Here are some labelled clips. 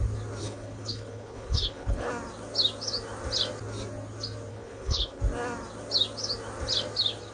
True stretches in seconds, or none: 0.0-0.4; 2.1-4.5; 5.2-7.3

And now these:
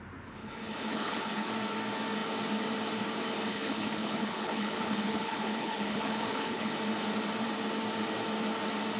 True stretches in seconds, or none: 0.0-0.4; 1.5-3.5; 6.7-9.0

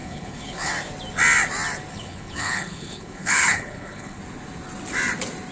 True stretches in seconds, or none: 0.7-1.9; 4.2-5.5

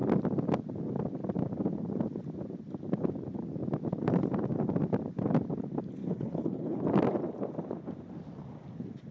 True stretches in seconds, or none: 0.0-6.0; 6.8-9.1